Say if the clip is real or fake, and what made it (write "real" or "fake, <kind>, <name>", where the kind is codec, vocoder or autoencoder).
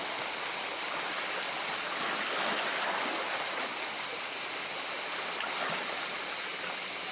real